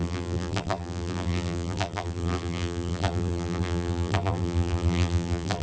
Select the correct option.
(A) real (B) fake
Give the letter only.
B